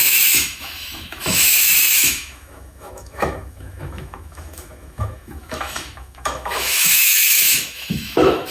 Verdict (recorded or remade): remade